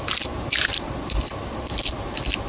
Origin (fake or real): real